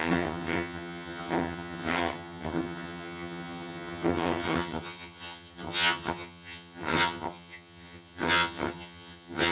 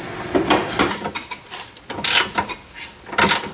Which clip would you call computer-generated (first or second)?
first